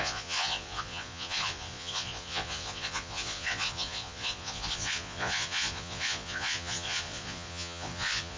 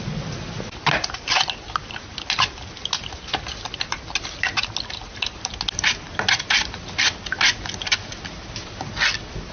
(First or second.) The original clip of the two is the second